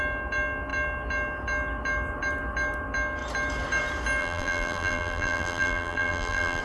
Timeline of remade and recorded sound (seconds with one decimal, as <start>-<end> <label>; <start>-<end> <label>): 0.0-4.2 recorded; 4.2-6.6 remade